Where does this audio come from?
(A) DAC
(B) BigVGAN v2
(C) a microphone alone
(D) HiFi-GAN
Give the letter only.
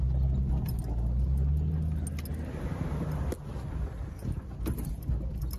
C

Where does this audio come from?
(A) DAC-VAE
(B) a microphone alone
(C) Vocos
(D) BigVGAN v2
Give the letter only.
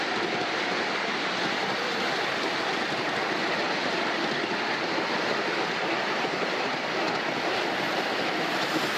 B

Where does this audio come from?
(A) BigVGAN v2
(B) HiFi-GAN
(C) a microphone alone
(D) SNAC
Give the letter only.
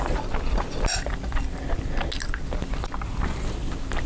C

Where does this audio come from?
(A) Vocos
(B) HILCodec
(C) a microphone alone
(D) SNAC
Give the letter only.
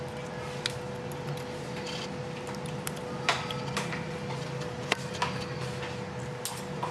C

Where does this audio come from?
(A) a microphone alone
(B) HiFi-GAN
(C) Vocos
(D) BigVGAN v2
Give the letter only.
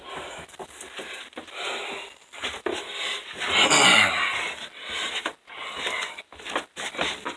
A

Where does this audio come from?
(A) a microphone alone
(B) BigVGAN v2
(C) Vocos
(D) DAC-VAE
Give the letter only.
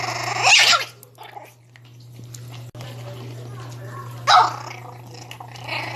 A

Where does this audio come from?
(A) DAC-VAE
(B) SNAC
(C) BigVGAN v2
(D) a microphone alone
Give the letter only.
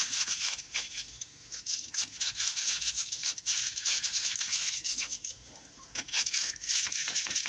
A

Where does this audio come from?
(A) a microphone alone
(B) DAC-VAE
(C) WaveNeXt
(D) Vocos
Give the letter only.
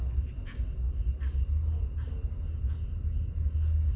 A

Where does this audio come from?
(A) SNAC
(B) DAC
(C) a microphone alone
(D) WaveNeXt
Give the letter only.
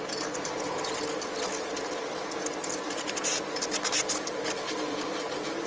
C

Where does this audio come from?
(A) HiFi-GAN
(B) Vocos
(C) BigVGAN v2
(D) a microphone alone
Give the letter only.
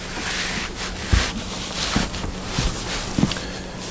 D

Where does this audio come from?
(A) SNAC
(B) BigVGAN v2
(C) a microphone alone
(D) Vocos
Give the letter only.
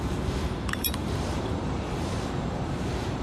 B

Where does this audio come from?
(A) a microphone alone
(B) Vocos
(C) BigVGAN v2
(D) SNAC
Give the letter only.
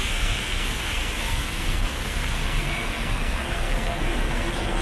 D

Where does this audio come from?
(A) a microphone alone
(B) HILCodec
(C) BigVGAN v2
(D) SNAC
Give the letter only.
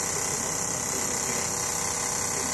A